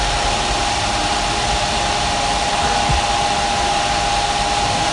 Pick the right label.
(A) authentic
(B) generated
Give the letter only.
A